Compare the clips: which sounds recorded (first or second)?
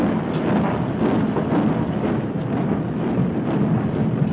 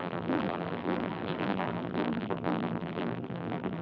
first